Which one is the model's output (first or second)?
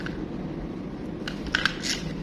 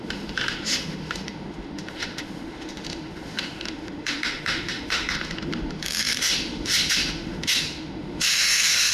second